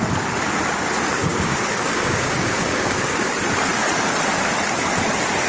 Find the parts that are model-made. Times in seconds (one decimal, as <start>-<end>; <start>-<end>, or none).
1.2-3.3